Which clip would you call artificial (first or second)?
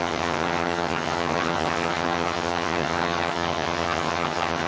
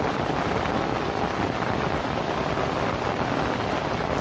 first